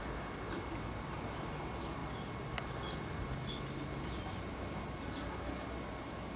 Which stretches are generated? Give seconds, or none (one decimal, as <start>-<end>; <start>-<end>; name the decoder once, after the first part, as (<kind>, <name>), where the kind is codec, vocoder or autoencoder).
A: 0.7-2.0 (vocoder, BigVGAN v2); 5.8-6.4